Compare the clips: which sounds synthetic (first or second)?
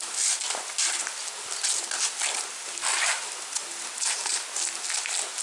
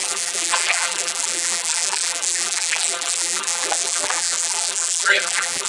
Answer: second